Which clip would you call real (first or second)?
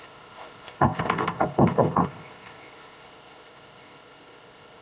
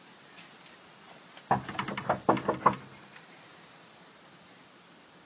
second